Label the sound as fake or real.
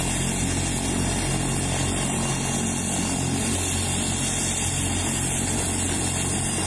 real